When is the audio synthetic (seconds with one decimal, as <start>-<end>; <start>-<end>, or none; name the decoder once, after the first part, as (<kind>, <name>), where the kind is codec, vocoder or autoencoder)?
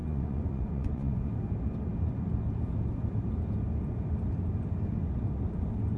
0.0-1.3 (vocoder, Vocos)